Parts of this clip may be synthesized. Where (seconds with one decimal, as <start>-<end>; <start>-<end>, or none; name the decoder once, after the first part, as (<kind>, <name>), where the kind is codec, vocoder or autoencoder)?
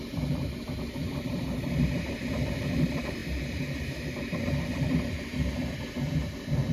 0.0-6.7 (vocoder, BigVGAN v2)